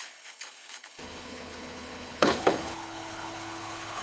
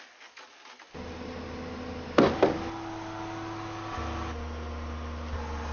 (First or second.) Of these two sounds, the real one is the second